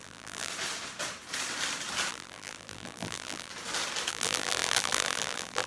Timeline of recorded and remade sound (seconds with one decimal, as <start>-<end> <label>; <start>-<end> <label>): 0.0-0.5 remade; 0.5-2.1 recorded; 2.1-3.5 remade; 3.5-4.1 recorded; 4.1-5.7 remade